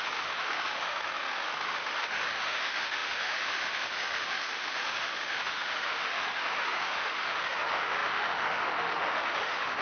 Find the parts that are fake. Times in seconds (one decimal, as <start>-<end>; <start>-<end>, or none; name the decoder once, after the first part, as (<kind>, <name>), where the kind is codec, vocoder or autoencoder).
0.0-9.8 (autoencoder, DAC-VAE)